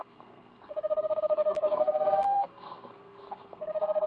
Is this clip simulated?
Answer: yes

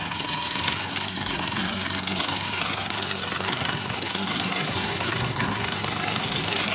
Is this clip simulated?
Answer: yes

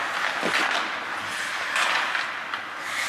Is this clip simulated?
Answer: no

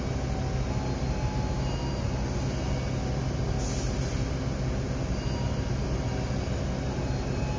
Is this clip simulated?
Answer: no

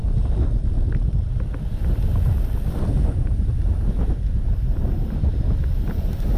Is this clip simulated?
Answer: no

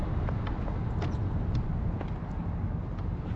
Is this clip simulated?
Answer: no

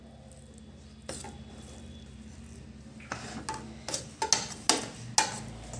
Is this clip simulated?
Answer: no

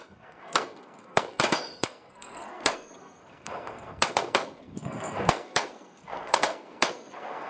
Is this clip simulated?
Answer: yes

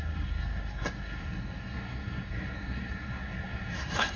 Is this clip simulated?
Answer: yes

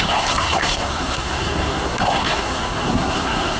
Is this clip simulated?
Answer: yes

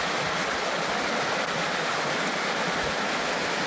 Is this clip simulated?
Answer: no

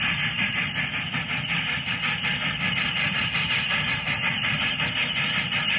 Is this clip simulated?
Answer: no